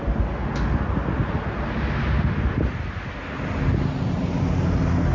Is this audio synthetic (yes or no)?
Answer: no